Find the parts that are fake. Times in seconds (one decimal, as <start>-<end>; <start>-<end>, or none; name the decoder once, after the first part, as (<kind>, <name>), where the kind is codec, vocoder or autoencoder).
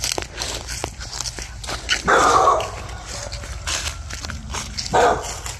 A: none